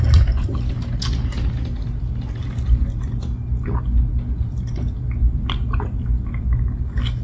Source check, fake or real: real